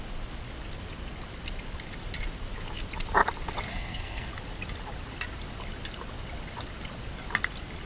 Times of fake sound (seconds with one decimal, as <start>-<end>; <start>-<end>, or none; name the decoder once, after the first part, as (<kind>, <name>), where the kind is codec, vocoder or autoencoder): 3.7-4.3 (codec, SNAC)